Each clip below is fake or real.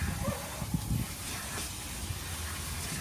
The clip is real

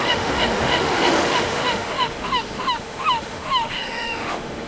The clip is fake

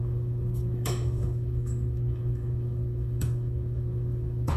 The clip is fake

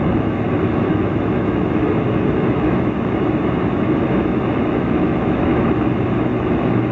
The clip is fake